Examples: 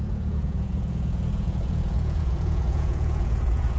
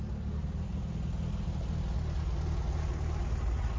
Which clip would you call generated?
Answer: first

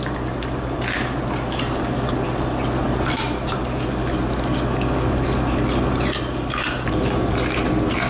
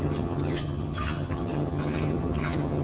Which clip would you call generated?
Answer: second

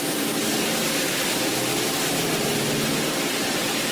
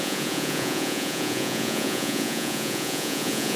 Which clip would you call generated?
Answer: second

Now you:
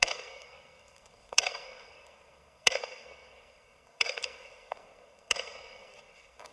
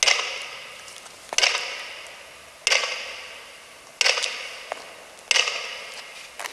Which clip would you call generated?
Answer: first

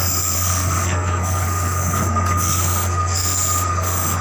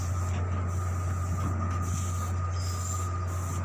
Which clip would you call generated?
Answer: first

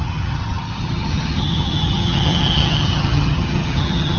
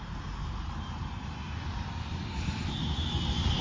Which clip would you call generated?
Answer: first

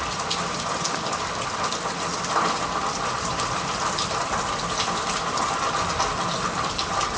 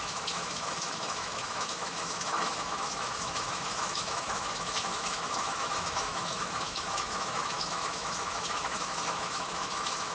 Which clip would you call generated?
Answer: second